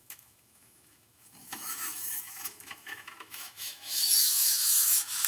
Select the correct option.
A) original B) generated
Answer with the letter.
B